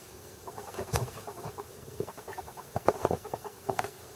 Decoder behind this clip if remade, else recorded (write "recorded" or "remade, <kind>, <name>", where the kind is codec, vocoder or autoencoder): remade, codec, SNAC